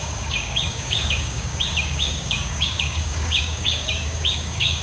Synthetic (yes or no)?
yes